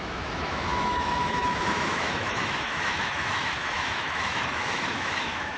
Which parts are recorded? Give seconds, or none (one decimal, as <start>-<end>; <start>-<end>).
none